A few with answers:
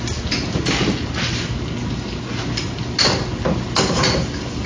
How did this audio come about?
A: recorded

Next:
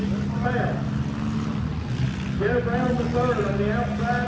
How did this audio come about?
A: recorded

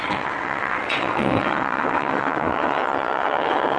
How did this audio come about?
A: remade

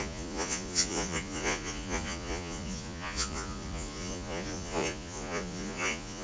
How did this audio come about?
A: remade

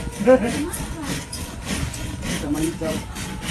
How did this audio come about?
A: remade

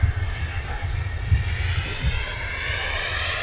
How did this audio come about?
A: recorded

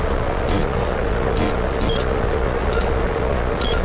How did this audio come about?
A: remade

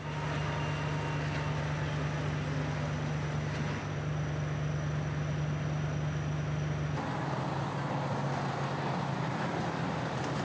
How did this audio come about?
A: recorded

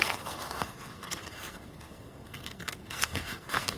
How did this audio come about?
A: remade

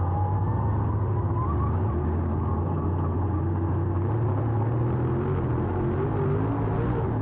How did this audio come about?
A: recorded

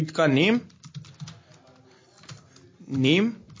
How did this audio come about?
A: recorded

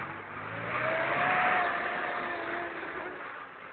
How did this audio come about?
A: recorded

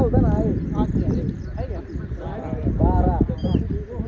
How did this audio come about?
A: recorded